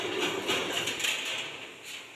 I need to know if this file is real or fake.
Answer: real